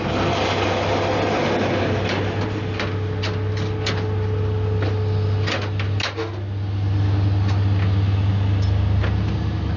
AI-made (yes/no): no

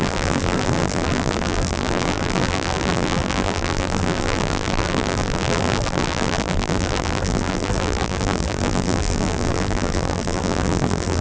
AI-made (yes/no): yes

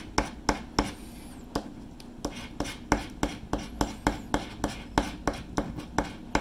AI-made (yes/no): no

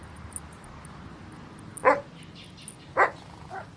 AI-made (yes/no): no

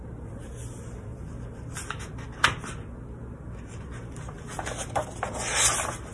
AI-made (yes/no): no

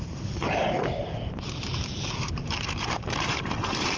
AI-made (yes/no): yes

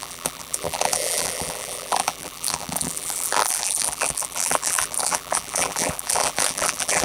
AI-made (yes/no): yes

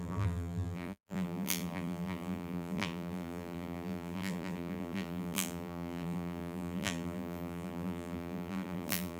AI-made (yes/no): yes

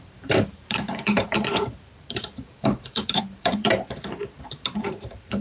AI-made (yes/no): yes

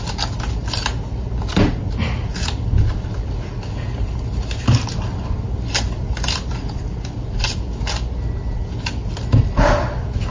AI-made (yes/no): no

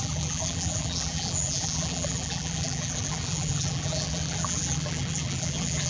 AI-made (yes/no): yes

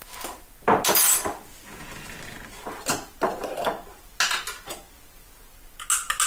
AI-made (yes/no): no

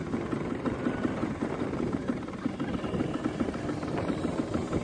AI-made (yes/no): yes